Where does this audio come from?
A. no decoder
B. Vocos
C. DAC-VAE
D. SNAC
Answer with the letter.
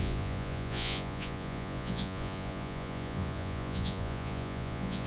B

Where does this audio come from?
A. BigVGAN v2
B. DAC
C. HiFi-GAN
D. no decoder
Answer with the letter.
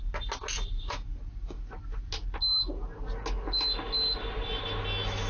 D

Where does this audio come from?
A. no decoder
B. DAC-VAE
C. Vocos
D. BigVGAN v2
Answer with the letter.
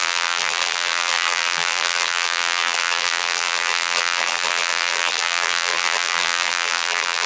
D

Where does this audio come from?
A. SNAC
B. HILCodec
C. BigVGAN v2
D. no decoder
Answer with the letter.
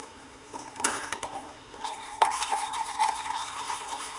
A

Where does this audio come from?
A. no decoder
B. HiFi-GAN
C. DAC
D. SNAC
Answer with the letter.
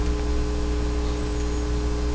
A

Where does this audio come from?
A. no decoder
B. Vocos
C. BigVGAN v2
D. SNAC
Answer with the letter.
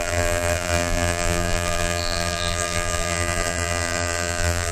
C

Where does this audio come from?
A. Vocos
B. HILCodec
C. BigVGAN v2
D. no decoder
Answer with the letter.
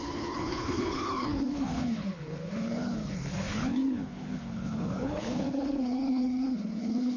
B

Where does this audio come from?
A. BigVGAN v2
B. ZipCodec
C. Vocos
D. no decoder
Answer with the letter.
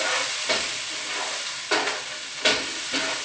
D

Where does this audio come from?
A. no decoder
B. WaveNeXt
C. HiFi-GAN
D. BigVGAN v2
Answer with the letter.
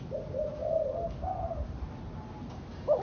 A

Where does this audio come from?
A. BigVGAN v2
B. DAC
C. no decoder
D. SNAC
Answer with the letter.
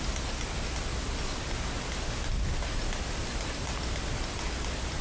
C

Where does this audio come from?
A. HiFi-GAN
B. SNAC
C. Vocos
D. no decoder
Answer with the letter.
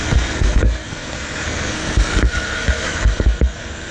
B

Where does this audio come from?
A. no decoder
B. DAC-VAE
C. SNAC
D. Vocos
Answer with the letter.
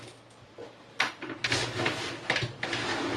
A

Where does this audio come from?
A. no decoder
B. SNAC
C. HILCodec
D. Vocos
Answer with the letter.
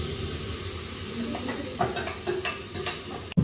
A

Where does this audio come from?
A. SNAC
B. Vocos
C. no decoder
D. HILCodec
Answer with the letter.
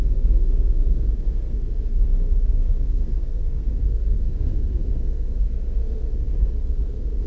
A